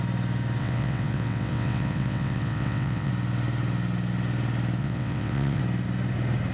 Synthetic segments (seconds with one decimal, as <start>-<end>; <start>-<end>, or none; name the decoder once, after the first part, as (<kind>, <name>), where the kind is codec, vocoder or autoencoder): 0.6-3.1 (vocoder, WaveNeXt); 4.8-5.6